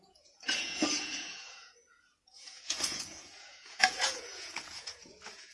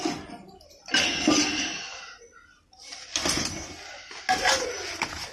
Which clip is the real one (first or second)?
second